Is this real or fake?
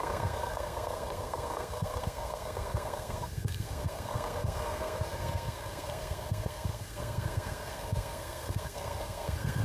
fake